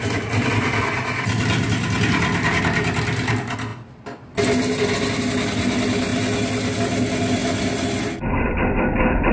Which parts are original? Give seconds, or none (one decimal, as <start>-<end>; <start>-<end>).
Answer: 0.0-9.3

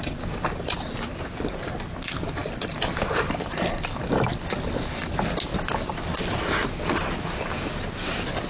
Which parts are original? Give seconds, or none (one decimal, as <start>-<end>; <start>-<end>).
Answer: 0.0-8.5

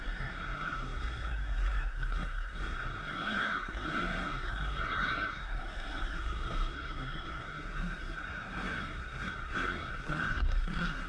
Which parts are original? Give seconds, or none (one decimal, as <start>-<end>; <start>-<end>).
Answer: none

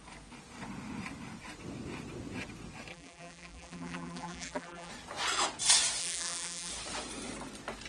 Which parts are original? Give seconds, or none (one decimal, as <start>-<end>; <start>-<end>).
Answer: 0.0-2.9; 4.9-6.0; 6.7-7.9